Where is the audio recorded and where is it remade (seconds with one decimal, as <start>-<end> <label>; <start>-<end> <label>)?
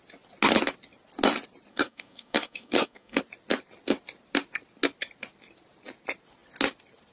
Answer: 0.0-1.7 recorded; 1.7-3.2 remade; 3.2-7.1 recorded